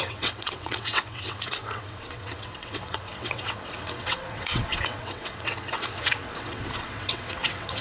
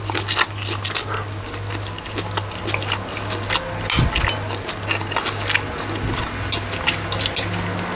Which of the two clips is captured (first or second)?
second